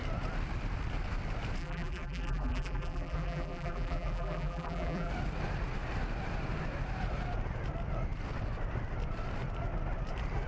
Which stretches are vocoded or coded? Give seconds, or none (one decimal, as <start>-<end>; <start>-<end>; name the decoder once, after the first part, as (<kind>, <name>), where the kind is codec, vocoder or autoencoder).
1.6-5.1 (vocoder, BigVGAN v2)